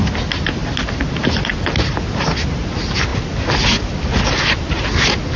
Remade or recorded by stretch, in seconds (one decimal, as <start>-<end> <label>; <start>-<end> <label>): 0.0-0.6 recorded; 0.6-1.3 remade; 1.3-5.4 recorded